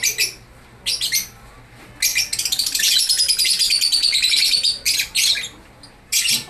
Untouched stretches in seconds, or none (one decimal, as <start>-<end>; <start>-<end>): 0.0-2.1; 5.9-6.5

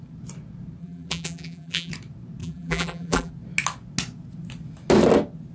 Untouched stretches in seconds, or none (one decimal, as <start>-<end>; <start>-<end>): 0.0-0.8; 1.9-2.4; 3.3-5.5

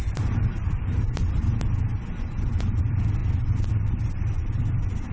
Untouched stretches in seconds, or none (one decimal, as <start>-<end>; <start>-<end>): 1.4-2.1; 3.2-3.7